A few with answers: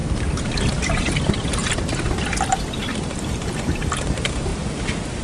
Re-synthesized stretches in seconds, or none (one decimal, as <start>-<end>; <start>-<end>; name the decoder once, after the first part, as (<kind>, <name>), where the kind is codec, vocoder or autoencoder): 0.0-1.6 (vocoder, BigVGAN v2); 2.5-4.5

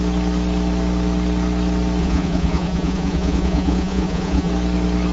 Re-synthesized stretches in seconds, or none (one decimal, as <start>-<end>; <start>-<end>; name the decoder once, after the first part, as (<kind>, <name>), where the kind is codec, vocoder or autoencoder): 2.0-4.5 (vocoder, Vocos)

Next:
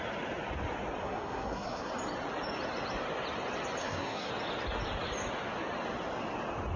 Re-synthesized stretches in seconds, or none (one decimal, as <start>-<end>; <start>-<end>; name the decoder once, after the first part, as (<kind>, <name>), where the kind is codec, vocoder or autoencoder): 1.0-1.9 (codec, SNAC); 3.8-4.3

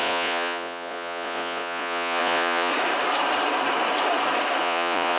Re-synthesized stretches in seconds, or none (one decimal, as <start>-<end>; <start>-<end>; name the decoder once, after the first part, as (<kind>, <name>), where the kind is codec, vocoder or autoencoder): 0.0-2.7 (vocoder, Vocos); 4.6-5.2